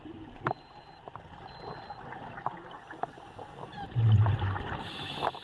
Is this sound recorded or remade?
recorded